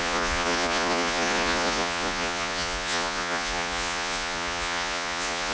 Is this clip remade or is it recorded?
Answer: remade